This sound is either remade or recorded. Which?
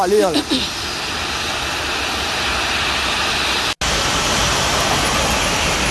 recorded